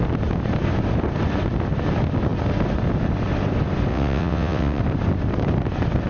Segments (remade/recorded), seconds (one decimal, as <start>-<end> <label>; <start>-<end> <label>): 0.0-3.9 recorded; 3.9-4.8 remade; 4.8-6.1 recorded